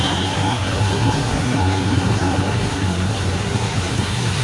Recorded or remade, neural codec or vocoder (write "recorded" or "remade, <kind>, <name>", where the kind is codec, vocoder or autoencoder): remade, codec, SNAC